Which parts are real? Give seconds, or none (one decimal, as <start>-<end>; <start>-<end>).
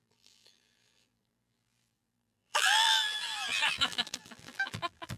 none